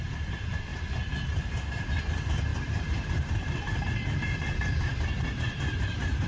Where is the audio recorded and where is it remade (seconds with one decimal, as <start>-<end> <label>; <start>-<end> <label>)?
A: 0.0-0.7 remade; 0.7-2.0 recorded; 2.0-6.3 remade